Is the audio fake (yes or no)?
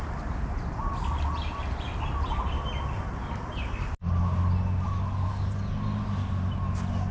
no